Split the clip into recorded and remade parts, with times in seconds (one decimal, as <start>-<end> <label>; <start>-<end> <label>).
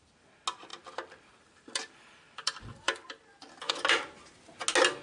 0.0-0.7 recorded; 0.7-3.7 remade; 3.7-5.0 recorded